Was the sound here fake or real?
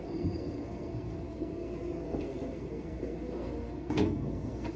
fake